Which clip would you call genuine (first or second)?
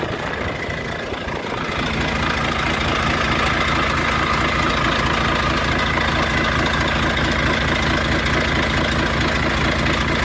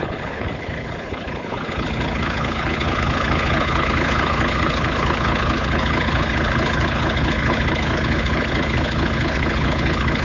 first